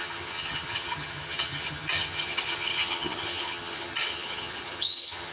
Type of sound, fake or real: fake